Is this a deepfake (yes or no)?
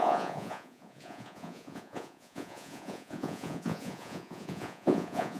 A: yes